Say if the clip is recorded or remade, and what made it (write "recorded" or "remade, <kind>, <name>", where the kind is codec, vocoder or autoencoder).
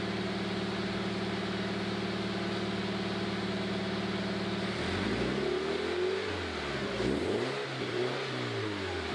recorded